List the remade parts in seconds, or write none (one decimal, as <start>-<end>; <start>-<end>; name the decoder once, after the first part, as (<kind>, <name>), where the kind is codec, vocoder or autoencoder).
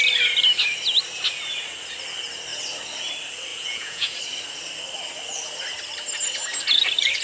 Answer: 3.5-4.2 (vocoder, Vocos)